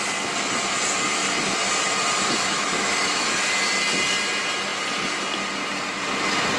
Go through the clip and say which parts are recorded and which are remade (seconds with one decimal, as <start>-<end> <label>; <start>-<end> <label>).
0.0-2.4 recorded; 2.4-3.5 remade; 3.5-6.6 recorded